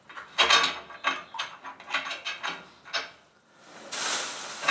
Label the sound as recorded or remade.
recorded